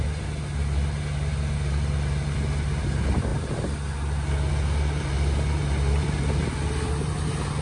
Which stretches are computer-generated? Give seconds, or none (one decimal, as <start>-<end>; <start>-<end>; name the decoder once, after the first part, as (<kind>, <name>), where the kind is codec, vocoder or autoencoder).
none